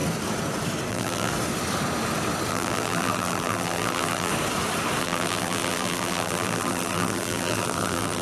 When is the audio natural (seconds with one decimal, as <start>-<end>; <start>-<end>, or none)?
0.0-0.9; 1.3-2.5; 4.3-5.0